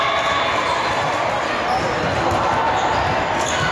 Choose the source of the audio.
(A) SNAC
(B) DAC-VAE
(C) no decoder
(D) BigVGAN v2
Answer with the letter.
C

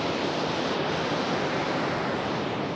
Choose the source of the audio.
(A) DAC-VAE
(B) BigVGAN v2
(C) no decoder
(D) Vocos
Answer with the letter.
C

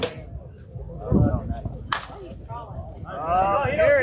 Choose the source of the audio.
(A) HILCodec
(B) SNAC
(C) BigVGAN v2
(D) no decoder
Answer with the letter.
D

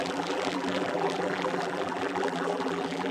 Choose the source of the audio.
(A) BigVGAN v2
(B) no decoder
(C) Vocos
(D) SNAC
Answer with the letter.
A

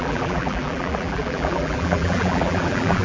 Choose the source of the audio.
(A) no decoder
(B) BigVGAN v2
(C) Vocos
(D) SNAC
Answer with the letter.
B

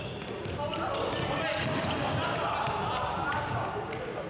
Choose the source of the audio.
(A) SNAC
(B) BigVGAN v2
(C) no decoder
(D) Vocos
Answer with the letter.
C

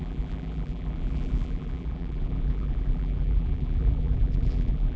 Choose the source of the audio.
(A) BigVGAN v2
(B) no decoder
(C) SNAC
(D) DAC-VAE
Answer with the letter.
A